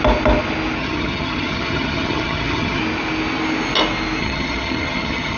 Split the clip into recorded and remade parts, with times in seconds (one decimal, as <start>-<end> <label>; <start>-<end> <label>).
0.0-0.8 recorded; 0.8-2.8 remade; 2.8-4.2 recorded; 4.2-5.4 remade